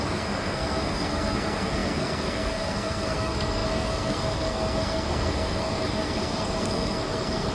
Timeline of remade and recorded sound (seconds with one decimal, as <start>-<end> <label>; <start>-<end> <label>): 0.0-7.5 remade